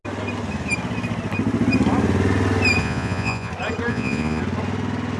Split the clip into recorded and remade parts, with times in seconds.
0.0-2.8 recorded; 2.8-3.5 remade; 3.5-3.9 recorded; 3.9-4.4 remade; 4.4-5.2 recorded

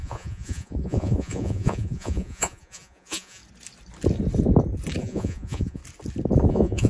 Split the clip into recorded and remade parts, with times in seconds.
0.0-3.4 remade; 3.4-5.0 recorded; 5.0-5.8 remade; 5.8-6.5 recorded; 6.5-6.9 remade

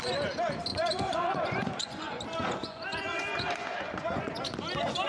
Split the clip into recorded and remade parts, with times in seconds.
0.0-0.7 recorded; 0.7-2.2 remade; 2.2-2.6 recorded; 2.6-4.4 remade; 4.4-5.1 recorded